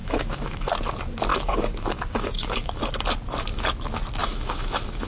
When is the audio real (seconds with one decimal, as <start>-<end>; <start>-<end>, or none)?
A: 0.7-1.3; 2.8-4.2

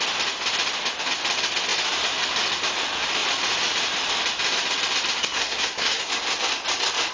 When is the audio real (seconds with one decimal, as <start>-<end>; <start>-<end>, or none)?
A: 0.0-5.2; 6.1-7.1

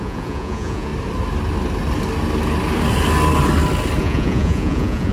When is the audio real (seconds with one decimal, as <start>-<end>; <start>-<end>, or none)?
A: 0.9-4.0

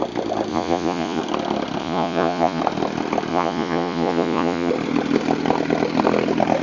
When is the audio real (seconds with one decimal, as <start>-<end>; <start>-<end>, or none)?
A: 0.0-0.5; 1.2-1.8; 2.6-3.3; 4.7-6.6